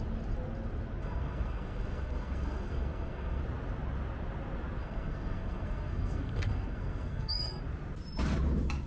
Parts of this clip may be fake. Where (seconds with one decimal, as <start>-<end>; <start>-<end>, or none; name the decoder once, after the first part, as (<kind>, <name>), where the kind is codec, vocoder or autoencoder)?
1.0-3.4 (codec, SNAC); 4.8-7.6